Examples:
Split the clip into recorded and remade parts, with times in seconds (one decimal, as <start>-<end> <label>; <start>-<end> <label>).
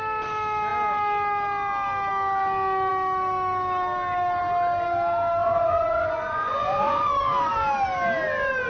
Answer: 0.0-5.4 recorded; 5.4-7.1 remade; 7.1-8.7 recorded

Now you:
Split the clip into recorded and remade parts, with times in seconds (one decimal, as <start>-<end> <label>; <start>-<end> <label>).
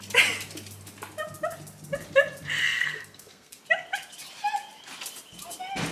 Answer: 0.0-2.6 recorded; 2.6-3.6 remade; 3.6-5.9 recorded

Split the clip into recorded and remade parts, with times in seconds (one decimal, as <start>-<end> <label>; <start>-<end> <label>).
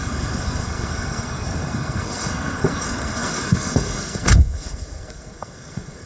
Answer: 0.0-6.1 remade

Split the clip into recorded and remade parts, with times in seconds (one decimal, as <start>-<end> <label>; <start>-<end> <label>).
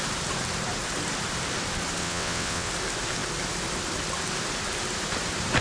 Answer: 0.0-2.0 recorded; 2.0-2.7 remade; 2.7-5.6 recorded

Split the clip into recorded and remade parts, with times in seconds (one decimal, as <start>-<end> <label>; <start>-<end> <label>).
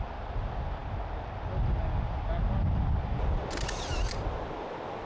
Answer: 0.0-5.1 recorded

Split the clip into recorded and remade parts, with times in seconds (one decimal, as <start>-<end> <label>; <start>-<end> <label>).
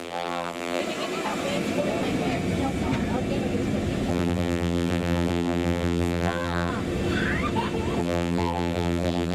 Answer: 0.0-0.8 remade; 0.8-4.1 recorded; 4.1-6.7 remade; 6.7-8.0 recorded; 8.0-9.3 remade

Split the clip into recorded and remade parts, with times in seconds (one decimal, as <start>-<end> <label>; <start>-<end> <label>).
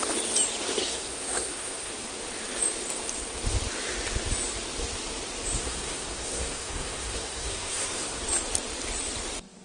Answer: 0.0-0.8 recorded; 0.8-1.9 remade; 1.9-5.6 recorded; 5.6-8.2 remade; 8.2-9.6 recorded